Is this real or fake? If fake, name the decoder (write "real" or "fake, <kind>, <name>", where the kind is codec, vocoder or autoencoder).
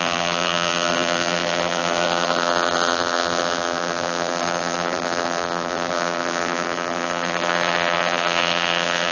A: fake, vocoder, BigVGAN v2